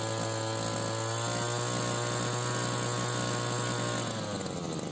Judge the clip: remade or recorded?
recorded